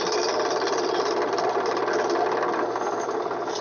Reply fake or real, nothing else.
real